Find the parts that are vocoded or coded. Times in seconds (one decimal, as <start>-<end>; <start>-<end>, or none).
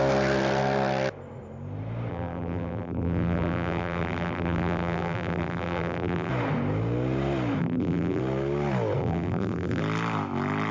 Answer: 2.1-6.3; 7.6-8.2; 9.0-9.8